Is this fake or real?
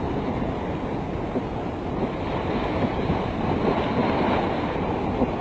real